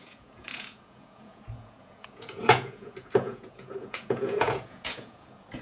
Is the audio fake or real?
fake